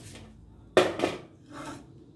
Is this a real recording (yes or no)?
yes